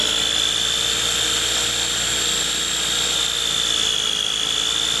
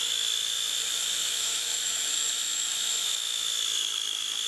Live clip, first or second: first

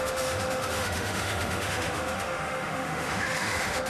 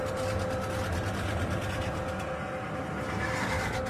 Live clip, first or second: second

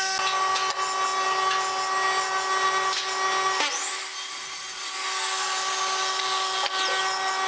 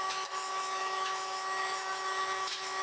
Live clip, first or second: first